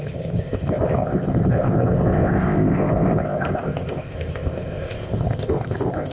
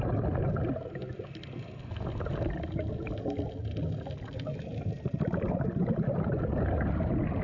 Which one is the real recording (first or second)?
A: second